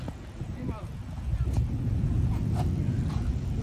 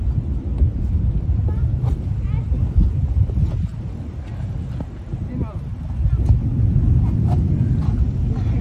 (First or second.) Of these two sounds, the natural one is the second